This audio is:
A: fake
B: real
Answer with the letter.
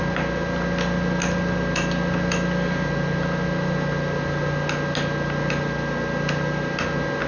B